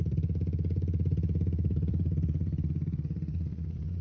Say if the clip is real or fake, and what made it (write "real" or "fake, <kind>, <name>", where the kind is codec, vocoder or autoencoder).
fake, vocoder, Vocos